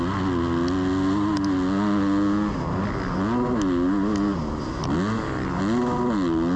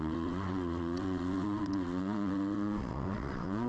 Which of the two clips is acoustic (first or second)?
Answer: first